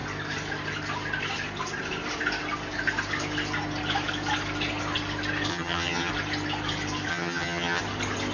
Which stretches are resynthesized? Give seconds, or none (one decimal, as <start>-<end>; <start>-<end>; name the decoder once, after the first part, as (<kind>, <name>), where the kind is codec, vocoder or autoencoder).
5.5-6.1 (vocoder, HiFi-GAN); 7.1-7.8